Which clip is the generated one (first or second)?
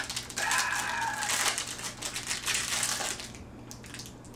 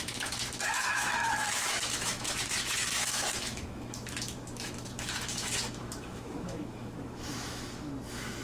second